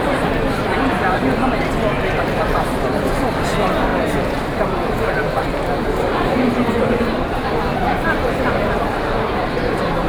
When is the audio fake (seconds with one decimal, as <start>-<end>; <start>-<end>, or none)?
0.0-10.1